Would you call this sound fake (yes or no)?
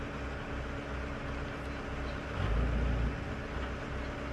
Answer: no